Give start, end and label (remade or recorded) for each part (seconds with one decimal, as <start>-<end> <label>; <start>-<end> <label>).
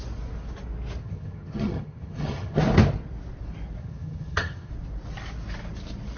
0.0-1.0 recorded; 1.0-2.6 remade; 2.6-3.8 recorded; 3.8-4.7 remade; 4.7-6.2 recorded